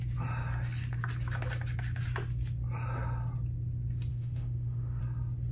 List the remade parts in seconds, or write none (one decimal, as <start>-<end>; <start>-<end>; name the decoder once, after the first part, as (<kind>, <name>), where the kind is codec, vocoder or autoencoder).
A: 4.1-5.0 (autoencoder, DAC-VAE)